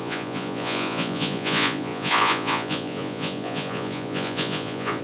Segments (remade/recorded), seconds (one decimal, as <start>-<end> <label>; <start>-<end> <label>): 0.0-5.0 remade